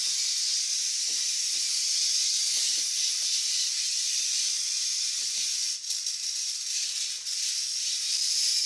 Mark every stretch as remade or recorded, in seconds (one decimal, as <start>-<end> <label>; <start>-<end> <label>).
0.0-1.0 recorded; 1.0-1.6 remade; 1.6-3.9 recorded; 3.9-7.3 remade; 7.3-8.7 recorded